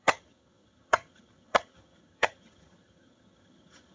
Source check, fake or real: fake